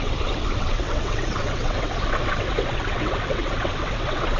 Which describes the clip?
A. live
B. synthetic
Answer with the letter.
B